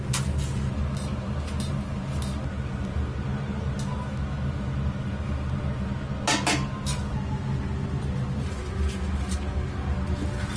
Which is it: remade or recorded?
recorded